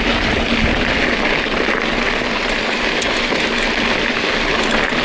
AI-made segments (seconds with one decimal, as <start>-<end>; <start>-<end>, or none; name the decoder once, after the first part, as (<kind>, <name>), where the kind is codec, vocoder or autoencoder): none